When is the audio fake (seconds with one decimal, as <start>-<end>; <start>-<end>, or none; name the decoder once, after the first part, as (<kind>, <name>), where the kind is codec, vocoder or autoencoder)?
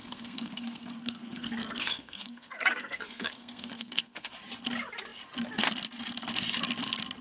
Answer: 0.0-4.3 (codec, SNAC)